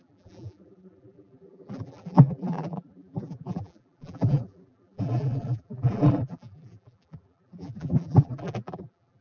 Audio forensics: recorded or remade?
remade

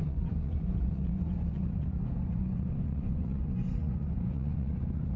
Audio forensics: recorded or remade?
remade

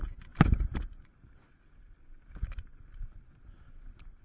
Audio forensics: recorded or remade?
recorded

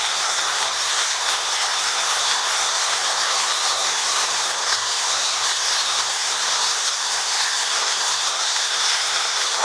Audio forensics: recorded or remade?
remade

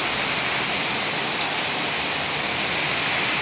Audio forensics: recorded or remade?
recorded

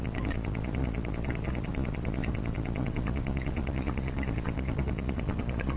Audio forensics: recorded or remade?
remade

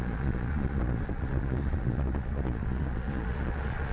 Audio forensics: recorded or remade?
remade